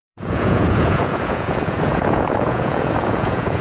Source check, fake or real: fake